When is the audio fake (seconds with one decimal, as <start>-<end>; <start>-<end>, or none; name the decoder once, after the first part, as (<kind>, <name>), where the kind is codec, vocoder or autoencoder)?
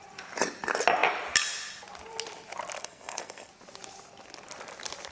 2.8-3.5 (codec, SNAC)